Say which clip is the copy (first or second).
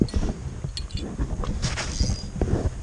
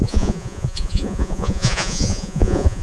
second